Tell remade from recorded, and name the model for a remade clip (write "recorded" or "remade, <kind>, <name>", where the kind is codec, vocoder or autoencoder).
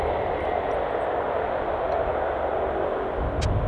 recorded